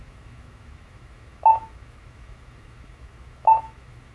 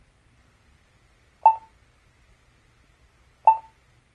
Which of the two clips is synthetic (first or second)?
first